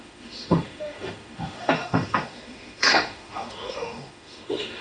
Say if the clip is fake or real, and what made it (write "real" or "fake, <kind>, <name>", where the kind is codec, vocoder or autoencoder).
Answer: fake, autoencoder, DAC-VAE